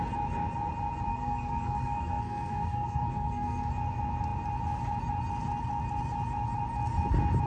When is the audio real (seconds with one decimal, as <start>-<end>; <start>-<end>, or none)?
0.0-1.1; 3.7-7.5